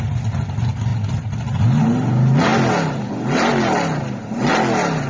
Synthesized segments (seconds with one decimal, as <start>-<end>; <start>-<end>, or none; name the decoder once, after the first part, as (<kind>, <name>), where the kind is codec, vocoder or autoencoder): none